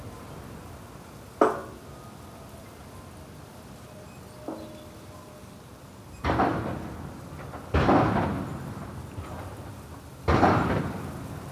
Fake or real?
real